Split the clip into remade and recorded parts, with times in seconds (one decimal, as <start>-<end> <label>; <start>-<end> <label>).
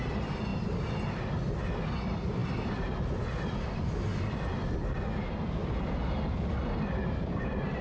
0.0-7.8 recorded